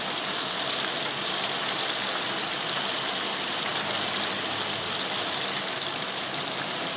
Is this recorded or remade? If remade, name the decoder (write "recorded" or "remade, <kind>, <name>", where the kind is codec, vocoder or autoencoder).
recorded